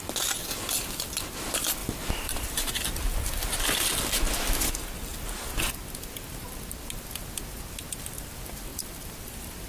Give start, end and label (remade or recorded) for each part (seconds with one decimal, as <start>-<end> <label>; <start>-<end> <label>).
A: 0.0-1.8 recorded; 1.8-3.0 remade; 3.0-8.7 recorded; 8.7-9.7 remade